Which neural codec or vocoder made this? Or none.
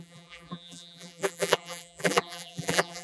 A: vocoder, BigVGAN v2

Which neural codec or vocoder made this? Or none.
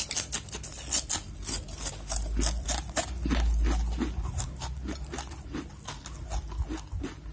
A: none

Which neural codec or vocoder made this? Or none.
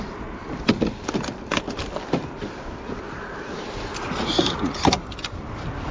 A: none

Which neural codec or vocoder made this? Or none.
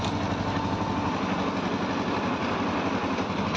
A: none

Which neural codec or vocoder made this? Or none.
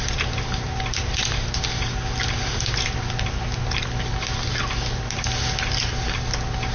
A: none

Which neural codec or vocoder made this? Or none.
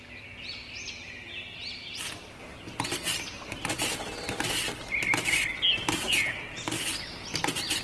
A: none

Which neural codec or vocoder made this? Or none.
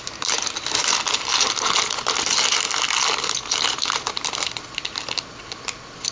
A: none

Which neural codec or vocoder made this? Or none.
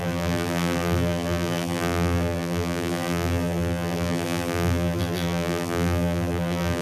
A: vocoder, BigVGAN v2